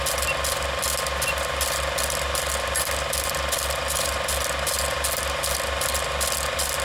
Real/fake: real